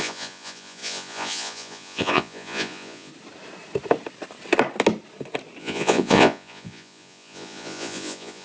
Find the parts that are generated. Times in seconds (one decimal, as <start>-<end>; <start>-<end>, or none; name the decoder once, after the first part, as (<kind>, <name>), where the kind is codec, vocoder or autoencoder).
0.0-3.1 (vocoder, Vocos); 5.6-8.4